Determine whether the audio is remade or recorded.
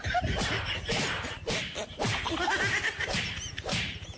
recorded